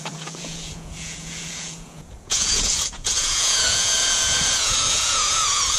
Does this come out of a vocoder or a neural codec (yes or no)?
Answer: yes